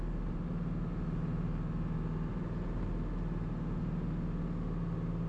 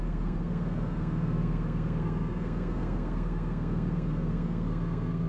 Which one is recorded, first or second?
first